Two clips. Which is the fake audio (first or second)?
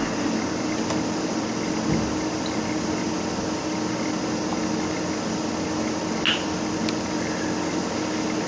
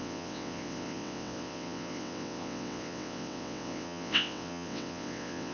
second